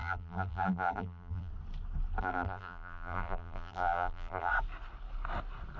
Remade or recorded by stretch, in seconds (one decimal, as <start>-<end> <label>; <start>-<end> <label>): 0.0-1.5 remade; 1.5-2.2 recorded; 2.2-4.5 remade; 4.5-5.8 recorded